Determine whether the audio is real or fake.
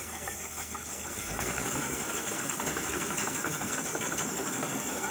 fake